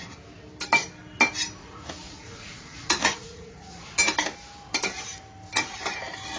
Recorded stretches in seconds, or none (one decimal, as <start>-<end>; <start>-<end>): 0.0-1.6; 3.8-6.4